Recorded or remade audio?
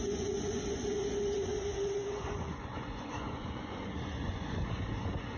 remade